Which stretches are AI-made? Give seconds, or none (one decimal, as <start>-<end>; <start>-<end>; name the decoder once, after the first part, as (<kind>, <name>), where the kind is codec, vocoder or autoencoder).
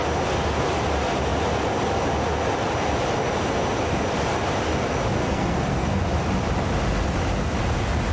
5.2-6.0 (codec, SNAC)